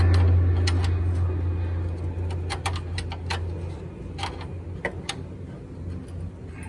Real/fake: real